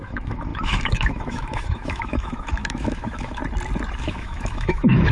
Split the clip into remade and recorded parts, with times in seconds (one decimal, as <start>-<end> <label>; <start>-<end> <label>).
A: 0.0-3.4 remade; 3.4-4.0 recorded; 4.0-5.1 remade